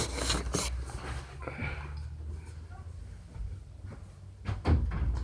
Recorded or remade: recorded